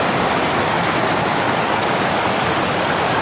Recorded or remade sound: remade